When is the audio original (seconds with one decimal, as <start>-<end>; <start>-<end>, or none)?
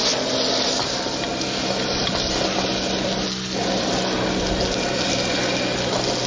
0.0-6.3